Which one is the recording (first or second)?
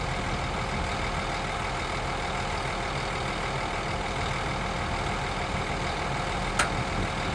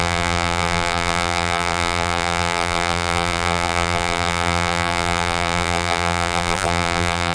first